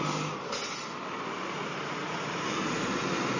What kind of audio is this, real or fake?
real